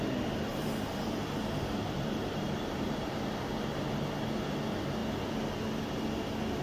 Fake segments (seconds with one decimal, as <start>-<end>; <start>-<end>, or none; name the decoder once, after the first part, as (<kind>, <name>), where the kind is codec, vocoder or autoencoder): 0.5-3.5 (vocoder, BigVGAN v2)